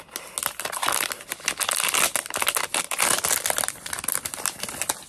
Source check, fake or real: real